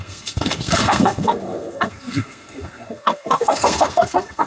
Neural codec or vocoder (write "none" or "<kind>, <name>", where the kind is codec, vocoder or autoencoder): codec, SNAC